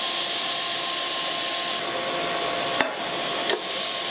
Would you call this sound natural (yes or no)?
yes